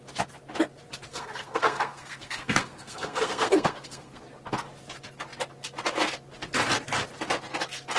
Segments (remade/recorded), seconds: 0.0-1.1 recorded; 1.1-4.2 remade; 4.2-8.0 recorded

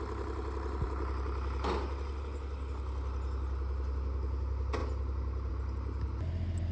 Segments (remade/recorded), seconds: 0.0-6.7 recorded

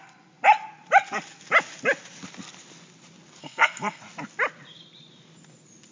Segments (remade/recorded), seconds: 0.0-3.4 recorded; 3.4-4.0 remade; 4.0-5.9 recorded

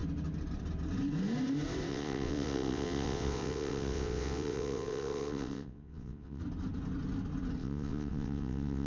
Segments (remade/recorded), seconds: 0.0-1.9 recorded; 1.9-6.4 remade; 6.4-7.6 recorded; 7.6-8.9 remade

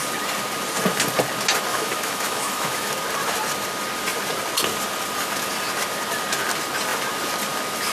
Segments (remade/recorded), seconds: 0.0-1.7 recorded; 1.7-2.9 remade; 2.9-7.9 recorded

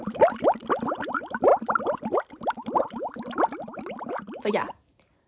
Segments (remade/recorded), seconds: 0.0-5.3 recorded

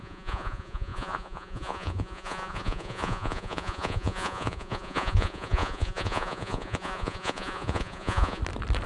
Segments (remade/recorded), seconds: 0.0-8.4 remade; 8.4-8.9 recorded